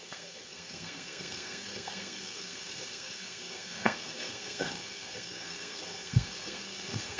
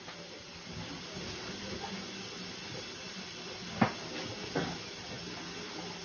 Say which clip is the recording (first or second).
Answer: second